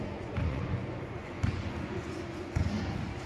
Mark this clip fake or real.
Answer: fake